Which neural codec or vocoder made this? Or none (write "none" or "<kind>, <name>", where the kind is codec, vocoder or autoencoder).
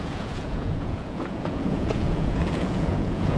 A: vocoder, Vocos